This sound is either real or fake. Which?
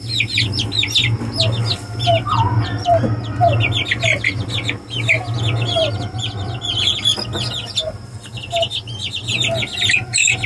real